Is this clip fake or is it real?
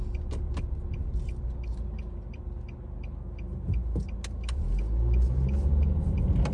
real